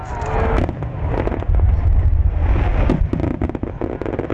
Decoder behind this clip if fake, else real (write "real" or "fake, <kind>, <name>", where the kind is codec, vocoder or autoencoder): real